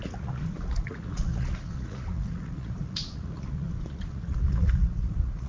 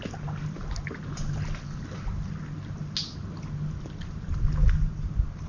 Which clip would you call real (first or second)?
second